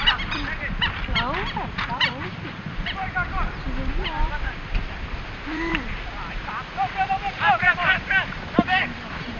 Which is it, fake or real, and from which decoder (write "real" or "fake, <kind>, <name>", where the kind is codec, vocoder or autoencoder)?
fake, vocoder, BigVGAN v2